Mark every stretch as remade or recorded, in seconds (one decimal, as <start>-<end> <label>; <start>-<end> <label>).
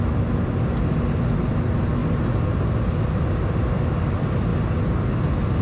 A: 0.0-5.6 recorded